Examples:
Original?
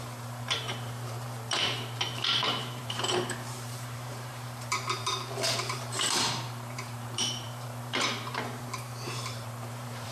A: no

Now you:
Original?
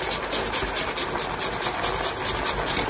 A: yes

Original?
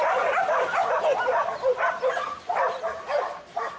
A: yes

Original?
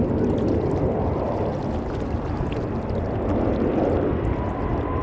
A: yes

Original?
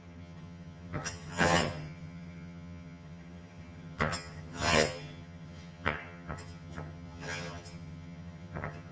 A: no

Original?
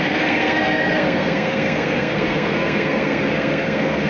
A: no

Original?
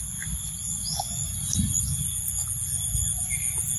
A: yes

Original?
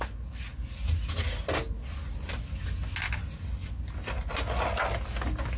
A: yes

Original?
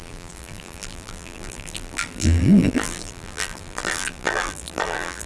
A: no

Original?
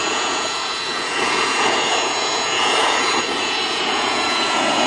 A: no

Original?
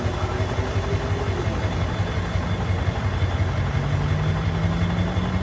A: yes